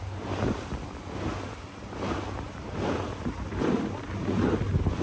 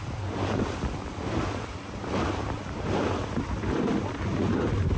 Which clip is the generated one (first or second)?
second